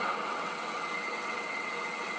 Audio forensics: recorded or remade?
remade